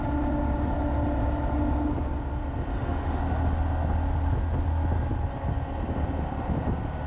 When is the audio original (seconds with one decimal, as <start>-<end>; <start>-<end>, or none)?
0.0-2.7; 3.2-7.1